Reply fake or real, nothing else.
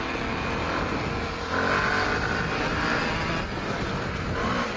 real